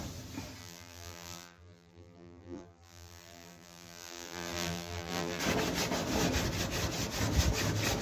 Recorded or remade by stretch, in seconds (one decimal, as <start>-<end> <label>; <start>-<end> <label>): 0.0-0.6 recorded; 0.6-5.4 remade; 5.4-8.0 recorded